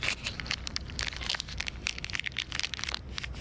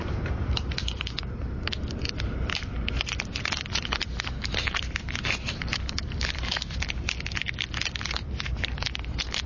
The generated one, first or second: second